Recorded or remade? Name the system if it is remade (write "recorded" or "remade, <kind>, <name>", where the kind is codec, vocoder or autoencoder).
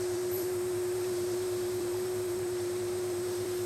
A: remade, vocoder, BigVGAN v2